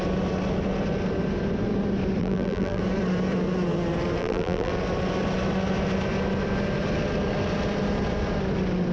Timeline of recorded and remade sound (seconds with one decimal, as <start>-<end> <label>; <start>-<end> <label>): 0.0-2.2 recorded; 2.2-2.8 remade; 2.8-4.2 recorded; 4.2-4.7 remade; 4.7-8.9 recorded